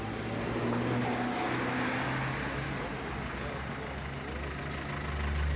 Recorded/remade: recorded